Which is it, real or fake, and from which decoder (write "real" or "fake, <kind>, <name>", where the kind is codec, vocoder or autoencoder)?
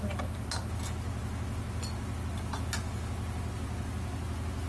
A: real